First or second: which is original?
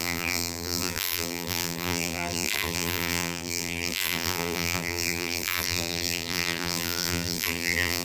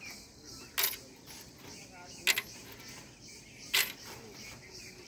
second